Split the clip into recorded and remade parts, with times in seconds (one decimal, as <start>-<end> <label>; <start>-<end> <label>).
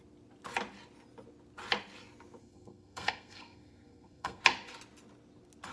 0.0-2.4 recorded; 2.4-4.4 remade; 4.4-5.7 recorded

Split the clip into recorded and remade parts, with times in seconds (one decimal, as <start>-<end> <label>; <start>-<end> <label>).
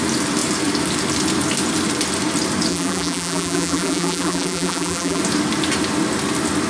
0.0-2.7 recorded; 2.7-5.2 remade; 5.2-6.7 recorded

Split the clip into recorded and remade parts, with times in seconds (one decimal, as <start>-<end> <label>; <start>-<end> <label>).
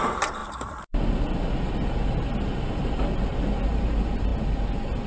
0.0-0.4 recorded; 0.4-3.3 remade; 3.3-5.1 recorded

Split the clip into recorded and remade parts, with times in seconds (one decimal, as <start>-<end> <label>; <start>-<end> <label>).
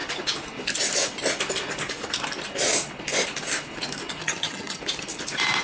0.0-4.2 recorded; 4.2-4.8 remade; 4.8-5.6 recorded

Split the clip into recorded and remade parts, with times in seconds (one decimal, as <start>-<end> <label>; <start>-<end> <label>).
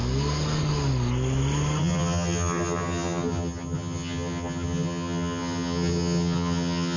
0.0-1.8 recorded; 1.8-7.0 remade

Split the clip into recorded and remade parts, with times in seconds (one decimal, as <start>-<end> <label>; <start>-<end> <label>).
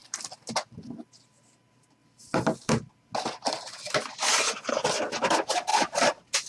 0.0-6.5 recorded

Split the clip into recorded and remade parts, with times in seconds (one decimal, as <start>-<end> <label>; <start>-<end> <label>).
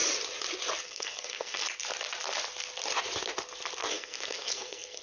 0.0-0.8 recorded; 0.8-1.6 remade; 1.6-3.9 recorded; 3.9-5.0 remade